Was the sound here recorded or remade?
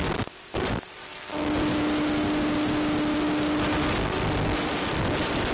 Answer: recorded